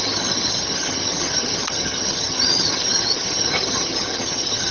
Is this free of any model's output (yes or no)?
no